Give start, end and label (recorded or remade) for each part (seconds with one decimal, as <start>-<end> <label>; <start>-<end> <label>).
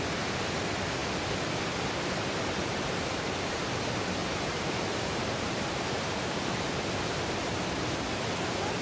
0.0-2.6 recorded; 2.6-3.6 remade; 3.6-4.2 recorded; 4.2-6.7 remade; 6.7-8.8 recorded